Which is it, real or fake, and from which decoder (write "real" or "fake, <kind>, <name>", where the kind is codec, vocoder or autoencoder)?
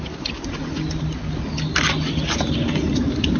real